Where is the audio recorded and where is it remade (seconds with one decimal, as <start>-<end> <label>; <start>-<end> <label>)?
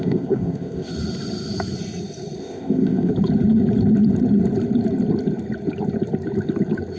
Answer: 0.0-0.9 remade; 0.9-2.4 recorded; 2.4-3.1 remade; 3.1-7.0 recorded